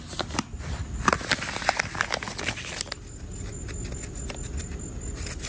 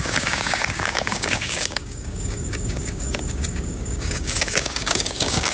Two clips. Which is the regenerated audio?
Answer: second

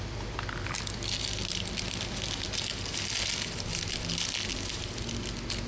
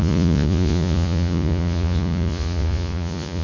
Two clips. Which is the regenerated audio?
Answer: second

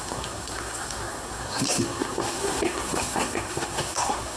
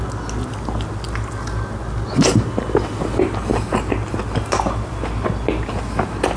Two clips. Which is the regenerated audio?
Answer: first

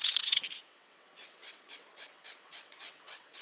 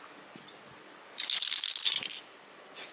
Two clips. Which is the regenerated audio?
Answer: first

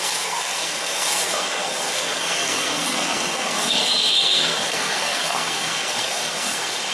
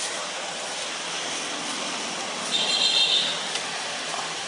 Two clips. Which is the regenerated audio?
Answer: first